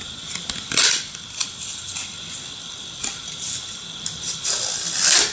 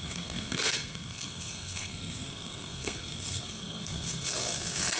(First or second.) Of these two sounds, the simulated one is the second